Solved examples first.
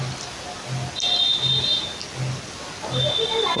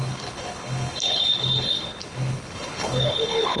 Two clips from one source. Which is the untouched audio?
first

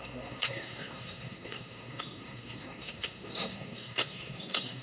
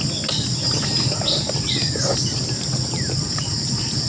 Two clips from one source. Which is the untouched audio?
second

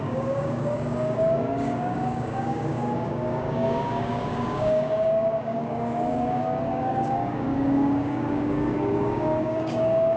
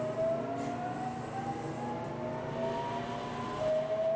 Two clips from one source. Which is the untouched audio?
second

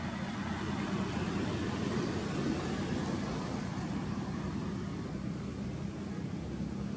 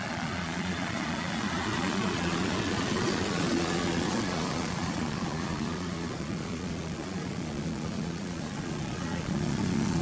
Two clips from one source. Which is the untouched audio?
first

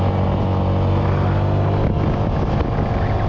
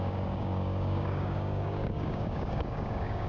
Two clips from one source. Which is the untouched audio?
first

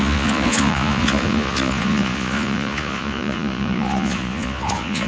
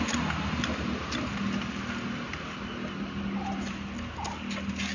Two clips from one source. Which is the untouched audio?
second